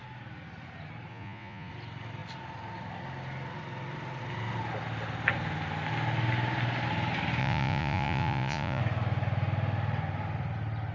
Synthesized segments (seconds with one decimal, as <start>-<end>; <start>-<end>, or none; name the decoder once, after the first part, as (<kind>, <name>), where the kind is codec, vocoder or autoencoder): 1.1-1.7 (vocoder, Vocos); 7.4-8.8